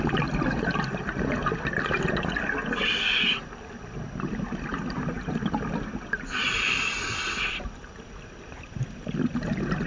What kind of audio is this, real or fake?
real